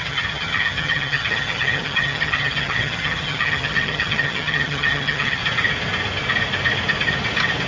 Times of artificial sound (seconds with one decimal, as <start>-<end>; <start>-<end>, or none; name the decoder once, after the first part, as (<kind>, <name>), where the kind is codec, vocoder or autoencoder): 0.0-5.4 (vocoder, HiFi-GAN)

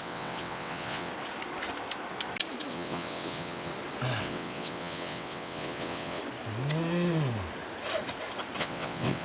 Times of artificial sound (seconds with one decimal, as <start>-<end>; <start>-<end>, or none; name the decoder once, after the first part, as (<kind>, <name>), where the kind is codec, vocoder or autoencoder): 0.0-1.1 (vocoder, WaveNeXt); 2.7-3.7; 4.2-6.2; 8.6-9.2

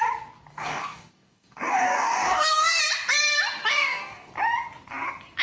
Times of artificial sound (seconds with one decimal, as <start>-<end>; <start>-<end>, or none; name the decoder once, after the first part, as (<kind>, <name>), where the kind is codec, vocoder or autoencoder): 0.5-2.8 (codec, DAC); 3.7-4.3

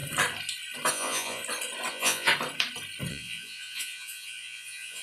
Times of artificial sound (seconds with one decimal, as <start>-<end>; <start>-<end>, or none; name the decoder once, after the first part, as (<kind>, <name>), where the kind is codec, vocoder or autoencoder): 0.9-1.4 (vocoder, Vocos); 1.9-2.3; 3.1-5.0

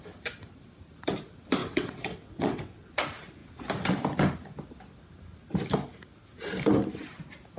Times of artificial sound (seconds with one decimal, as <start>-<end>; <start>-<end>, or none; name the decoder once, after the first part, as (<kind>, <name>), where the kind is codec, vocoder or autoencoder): 1.6-2.9 (vocoder, WaveNeXt)

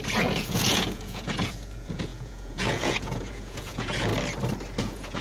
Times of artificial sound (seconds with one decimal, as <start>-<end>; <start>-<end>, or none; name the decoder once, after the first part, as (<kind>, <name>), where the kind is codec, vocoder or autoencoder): 0.0-4.1 (vocoder, Vocos); 4.8-5.2